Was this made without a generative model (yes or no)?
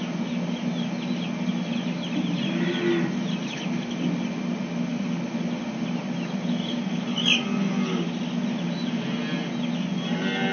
yes